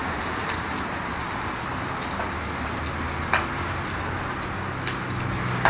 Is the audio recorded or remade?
remade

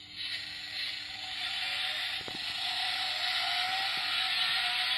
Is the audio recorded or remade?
recorded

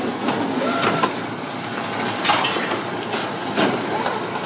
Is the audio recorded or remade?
remade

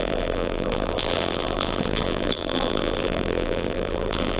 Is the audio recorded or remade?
remade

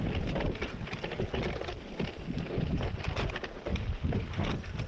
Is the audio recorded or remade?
recorded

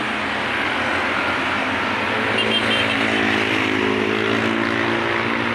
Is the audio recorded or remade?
recorded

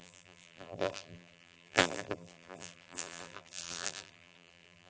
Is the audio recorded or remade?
remade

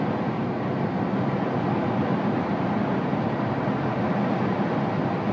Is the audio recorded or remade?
recorded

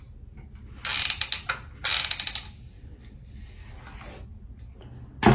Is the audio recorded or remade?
recorded